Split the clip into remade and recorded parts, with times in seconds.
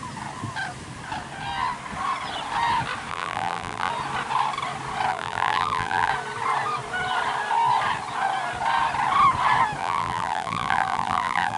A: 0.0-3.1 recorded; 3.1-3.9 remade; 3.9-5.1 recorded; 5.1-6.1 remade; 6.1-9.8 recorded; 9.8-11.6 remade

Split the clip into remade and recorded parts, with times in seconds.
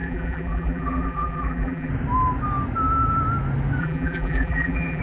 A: 0.0-1.9 remade; 1.9-3.8 recorded; 3.8-5.0 remade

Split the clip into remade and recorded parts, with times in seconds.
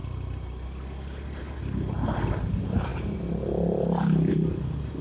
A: 0.0-5.0 recorded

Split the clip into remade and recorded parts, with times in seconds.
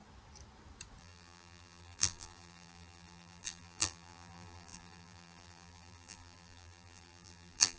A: 0.0-1.0 recorded; 1.0-7.8 remade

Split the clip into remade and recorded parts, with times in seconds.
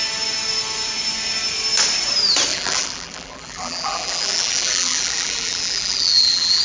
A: 0.0-2.5 recorded; 2.5-6.6 remade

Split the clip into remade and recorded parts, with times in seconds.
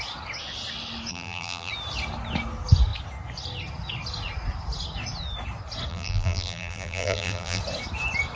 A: 0.0-1.1 recorded; 1.1-1.7 remade; 1.7-5.9 recorded; 5.9-7.6 remade; 7.6-8.4 recorded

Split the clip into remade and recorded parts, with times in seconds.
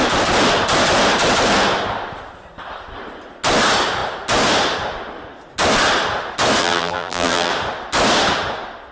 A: 0.0-6.6 recorded; 6.6-7.5 remade; 7.5-8.9 recorded